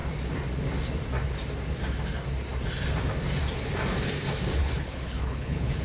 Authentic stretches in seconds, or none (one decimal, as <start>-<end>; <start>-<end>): 0.0-4.6